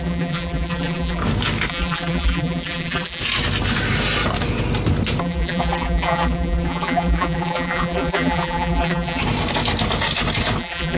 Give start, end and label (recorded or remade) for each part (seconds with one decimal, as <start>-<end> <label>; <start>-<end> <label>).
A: 0.0-1.2 remade; 1.2-1.7 recorded; 1.7-3.2 remade; 3.2-5.2 recorded; 5.2-9.2 remade; 9.2-10.6 recorded; 10.6-11.0 remade